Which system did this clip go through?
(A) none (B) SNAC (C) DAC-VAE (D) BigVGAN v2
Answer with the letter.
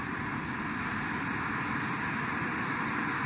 A